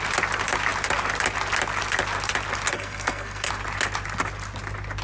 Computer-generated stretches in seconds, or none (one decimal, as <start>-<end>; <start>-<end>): 2.7-3.5